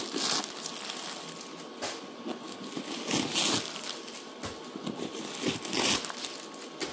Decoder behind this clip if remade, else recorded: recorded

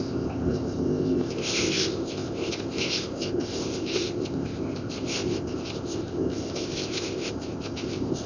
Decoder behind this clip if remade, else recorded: remade, codec, ZipCodec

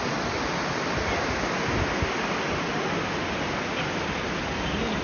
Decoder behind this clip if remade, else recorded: recorded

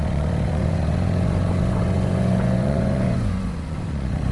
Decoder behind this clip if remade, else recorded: remade, vocoder, Vocos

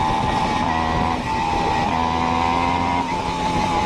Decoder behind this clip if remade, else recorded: recorded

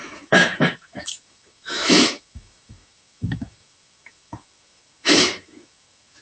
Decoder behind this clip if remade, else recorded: remade, autoencoder, DAC-VAE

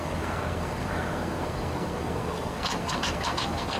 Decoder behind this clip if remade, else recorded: remade, codec, SNAC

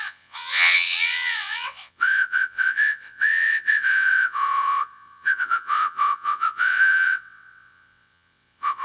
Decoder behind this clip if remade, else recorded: remade, vocoder, WaveNeXt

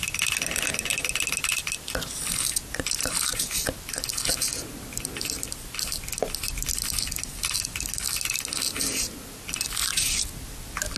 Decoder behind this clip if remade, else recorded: recorded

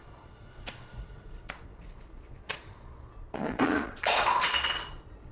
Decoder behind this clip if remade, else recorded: remade, vocoder, Vocos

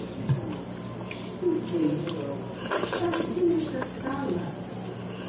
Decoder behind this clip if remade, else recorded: remade, vocoder, BigVGAN v2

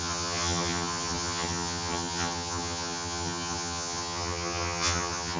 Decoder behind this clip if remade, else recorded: remade, vocoder, HiFi-GAN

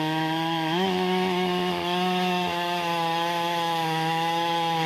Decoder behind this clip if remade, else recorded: remade, autoencoder, DAC-VAE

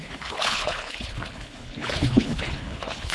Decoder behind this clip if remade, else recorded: remade, codec, HILCodec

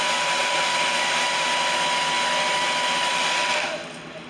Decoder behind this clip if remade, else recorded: recorded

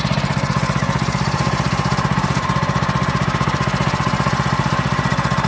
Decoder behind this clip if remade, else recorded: remade, vocoder, BigVGAN v2